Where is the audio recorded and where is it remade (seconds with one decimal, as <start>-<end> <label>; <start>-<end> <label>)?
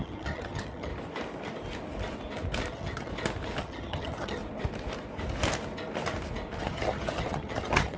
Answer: 0.0-0.9 remade; 0.9-2.7 recorded; 2.7-3.1 remade; 3.1-3.6 recorded; 3.6-4.4 remade; 4.4-6.6 recorded; 6.6-8.0 remade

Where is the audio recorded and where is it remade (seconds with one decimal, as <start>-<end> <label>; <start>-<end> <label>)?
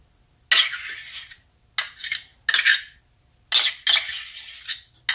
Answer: 0.0-5.1 recorded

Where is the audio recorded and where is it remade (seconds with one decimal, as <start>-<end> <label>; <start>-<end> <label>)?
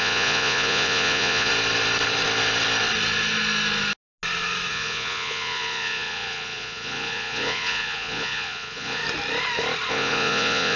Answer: 0.0-1.5 remade; 1.5-4.7 recorded; 4.7-9.0 remade; 9.0-9.9 recorded; 9.9-10.8 remade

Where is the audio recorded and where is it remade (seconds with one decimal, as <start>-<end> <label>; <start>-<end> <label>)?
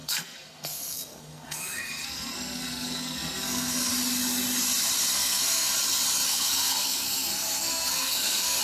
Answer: 0.0-3.9 remade; 3.9-5.1 recorded; 5.1-5.7 remade; 5.7-6.3 recorded; 6.3-8.6 remade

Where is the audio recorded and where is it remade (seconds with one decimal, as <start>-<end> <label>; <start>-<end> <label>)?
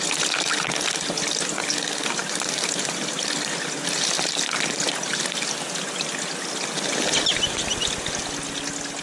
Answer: 0.0-9.0 recorded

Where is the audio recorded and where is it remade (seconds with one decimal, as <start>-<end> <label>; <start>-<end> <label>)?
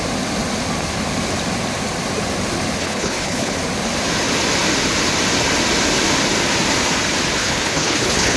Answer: 0.0-2.8 recorded; 2.8-3.6 remade; 3.6-7.4 recorded; 7.4-8.4 remade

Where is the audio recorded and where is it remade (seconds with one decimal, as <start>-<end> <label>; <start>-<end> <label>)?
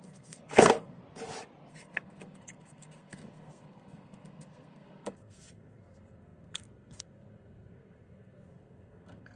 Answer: 0.0-1.0 remade; 1.0-1.7 recorded; 1.7-9.4 remade